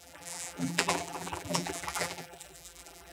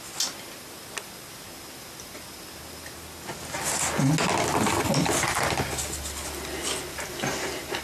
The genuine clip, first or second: second